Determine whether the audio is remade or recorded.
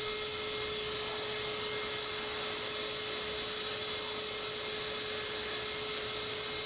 recorded